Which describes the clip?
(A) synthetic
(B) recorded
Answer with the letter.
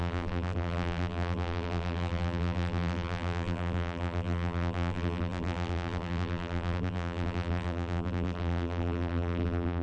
A